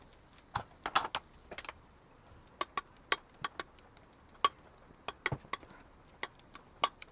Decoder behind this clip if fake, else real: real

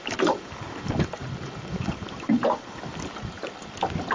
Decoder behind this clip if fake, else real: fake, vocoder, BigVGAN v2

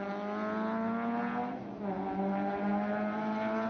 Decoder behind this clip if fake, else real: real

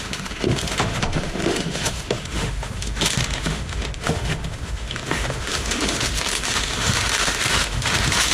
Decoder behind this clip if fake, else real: fake, autoencoder, DAC-VAE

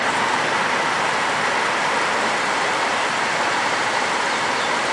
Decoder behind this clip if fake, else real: fake, vocoder, BigVGAN v2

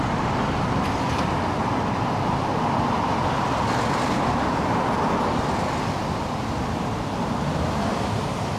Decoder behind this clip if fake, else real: real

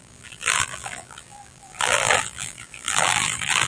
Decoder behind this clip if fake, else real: fake, vocoder, BigVGAN v2